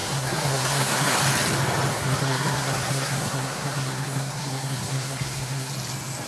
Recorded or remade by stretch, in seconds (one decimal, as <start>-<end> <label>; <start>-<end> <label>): 0.0-1.2 remade; 1.2-1.9 recorded; 1.9-5.7 remade; 5.7-6.3 recorded